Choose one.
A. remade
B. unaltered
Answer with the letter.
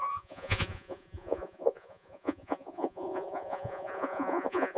A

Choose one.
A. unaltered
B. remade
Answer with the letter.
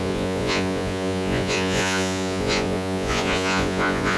B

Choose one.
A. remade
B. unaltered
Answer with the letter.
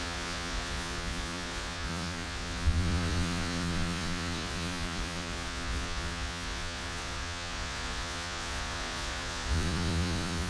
A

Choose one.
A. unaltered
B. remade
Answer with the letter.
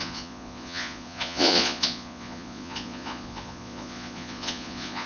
B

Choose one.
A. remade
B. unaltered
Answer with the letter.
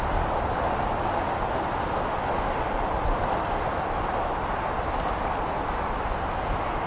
B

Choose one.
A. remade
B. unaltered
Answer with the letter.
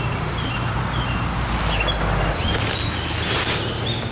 B